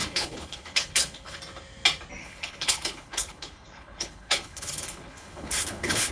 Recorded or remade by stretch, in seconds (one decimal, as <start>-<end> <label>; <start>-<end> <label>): 0.0-1.4 remade; 1.4-2.2 recorded; 2.2-6.1 remade